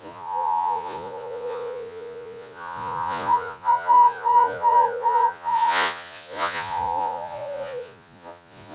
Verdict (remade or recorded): remade